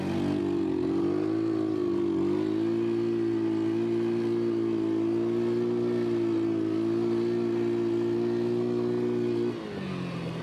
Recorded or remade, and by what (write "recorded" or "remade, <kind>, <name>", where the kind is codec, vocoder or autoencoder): recorded